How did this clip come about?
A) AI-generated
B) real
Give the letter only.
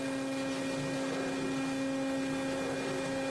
B